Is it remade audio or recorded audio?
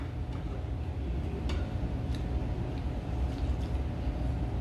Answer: recorded